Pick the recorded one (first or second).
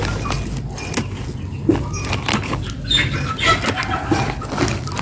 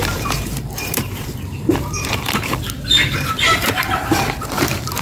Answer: first